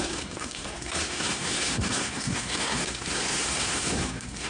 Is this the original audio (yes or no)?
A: no